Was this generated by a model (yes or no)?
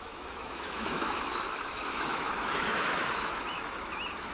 yes